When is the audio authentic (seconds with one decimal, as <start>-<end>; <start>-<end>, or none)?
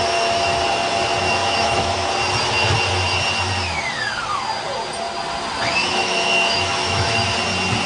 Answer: 0.0-1.4; 2.1-5.8; 7.3-7.9